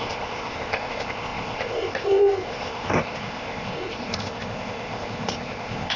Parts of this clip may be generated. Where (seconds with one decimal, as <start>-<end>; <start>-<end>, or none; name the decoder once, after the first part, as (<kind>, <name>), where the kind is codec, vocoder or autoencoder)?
0.0-6.0 (codec, ZipCodec)